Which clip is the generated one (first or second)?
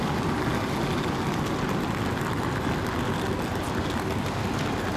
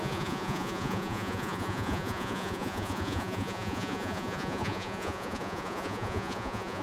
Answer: second